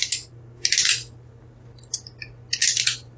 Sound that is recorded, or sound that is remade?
recorded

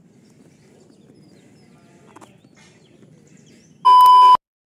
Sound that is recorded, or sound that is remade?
recorded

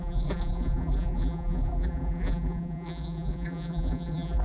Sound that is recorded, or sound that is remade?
remade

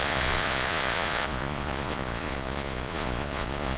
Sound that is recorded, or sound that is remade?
remade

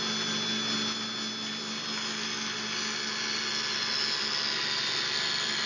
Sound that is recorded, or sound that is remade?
recorded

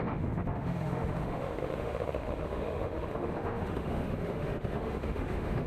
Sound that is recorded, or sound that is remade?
remade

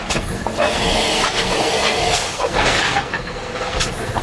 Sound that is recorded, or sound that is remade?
remade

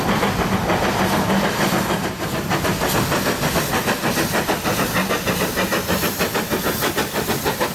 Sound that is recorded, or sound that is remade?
recorded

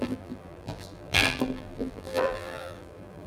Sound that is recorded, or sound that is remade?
remade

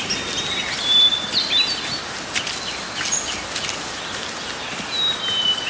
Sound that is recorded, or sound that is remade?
recorded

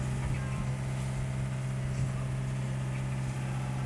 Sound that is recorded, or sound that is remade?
recorded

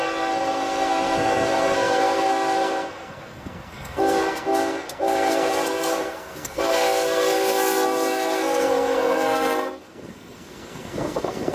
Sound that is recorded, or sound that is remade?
remade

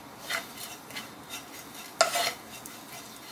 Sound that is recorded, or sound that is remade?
recorded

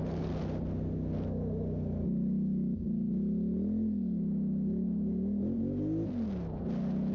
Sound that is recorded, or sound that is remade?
recorded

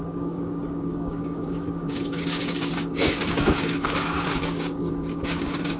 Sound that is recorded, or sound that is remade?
remade